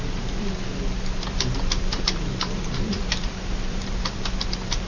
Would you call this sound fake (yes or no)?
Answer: yes